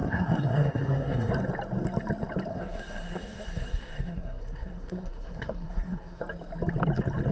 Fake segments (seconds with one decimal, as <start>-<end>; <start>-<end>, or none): 0.0-1.3; 2.5-6.2